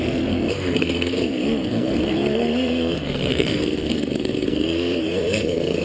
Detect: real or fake fake